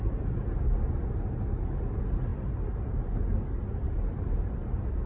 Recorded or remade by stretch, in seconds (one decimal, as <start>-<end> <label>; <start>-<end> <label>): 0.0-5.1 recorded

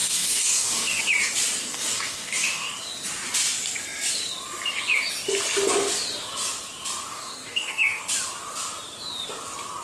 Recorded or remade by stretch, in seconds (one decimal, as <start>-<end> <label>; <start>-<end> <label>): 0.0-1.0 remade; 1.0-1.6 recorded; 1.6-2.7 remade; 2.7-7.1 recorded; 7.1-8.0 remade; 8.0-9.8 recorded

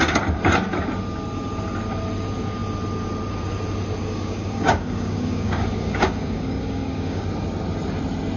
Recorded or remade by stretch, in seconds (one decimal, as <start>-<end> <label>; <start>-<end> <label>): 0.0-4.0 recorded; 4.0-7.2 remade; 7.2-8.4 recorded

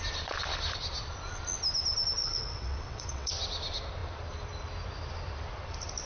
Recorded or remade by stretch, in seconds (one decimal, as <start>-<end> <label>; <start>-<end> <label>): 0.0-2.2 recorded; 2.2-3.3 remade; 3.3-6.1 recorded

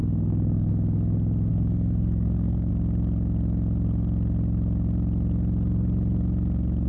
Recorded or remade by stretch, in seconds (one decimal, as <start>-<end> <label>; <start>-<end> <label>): 0.0-0.7 remade; 0.7-1.5 recorded; 1.5-2.7 remade; 2.7-6.9 recorded

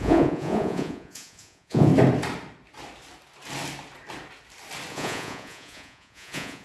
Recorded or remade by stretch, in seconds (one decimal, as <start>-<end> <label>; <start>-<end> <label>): 0.0-1.9 remade; 1.9-4.9 recorded; 4.9-6.6 remade

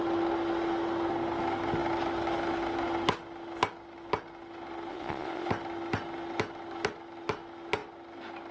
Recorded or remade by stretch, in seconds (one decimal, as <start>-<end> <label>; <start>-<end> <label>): 0.0-4.9 recorded; 4.9-5.5 remade; 5.5-8.5 recorded

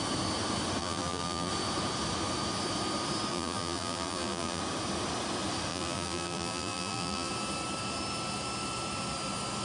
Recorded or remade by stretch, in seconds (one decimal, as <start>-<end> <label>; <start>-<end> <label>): 0.0-0.8 recorded; 0.8-1.5 remade; 1.5-3.3 recorded; 3.3-4.6 remade; 4.6-5.7 recorded; 5.7-7.3 remade; 7.3-9.6 recorded